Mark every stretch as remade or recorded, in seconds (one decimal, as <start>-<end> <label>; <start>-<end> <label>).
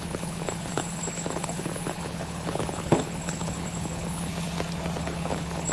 0.0-4.3 remade; 4.3-5.0 recorded; 5.0-5.7 remade